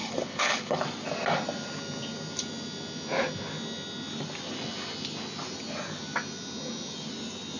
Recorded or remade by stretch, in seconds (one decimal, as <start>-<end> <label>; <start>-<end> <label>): 0.0-0.8 remade; 0.8-7.6 recorded